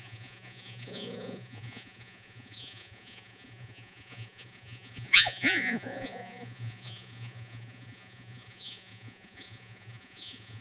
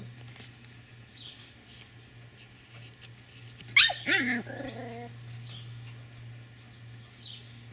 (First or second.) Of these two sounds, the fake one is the first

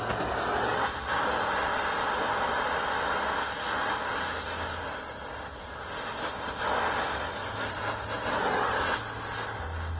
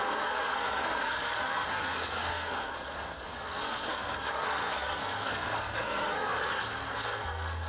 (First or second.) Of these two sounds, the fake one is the second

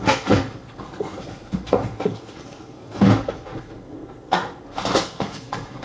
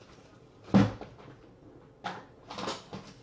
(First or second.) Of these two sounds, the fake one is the first